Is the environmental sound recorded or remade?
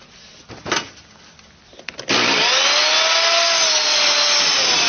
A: recorded